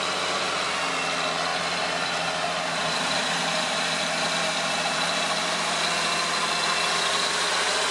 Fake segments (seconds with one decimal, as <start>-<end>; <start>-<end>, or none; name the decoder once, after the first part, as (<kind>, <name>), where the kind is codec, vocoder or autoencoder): 1.5-5.8 (vocoder, BigVGAN v2)